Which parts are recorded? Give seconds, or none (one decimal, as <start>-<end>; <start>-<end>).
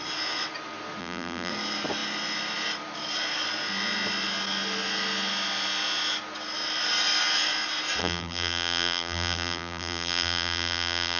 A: 0.0-1.0; 1.5-8.0